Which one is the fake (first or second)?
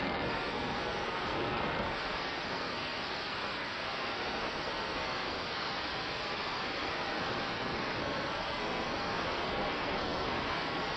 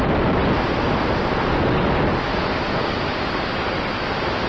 first